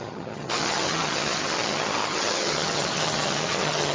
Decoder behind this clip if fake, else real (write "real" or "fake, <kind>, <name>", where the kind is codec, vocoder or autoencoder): fake, vocoder, HiFi-GAN